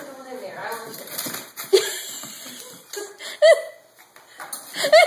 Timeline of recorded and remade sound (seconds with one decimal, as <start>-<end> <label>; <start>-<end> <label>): 0.0-0.6 recorded; 0.6-3.7 remade; 3.7-5.1 recorded